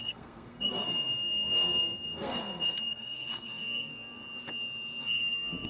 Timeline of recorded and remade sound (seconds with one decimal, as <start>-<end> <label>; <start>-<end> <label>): 0.0-4.2 remade; 4.2-5.0 recorded; 5.0-5.7 remade